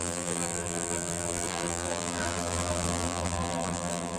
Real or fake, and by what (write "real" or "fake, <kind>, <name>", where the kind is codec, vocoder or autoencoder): fake, vocoder, BigVGAN v2